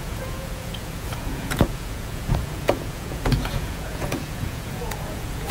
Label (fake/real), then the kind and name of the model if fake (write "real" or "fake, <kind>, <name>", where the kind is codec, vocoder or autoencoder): fake, vocoder, Vocos